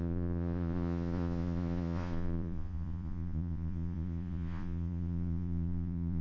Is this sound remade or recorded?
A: remade